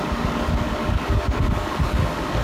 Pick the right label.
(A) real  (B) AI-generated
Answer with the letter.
B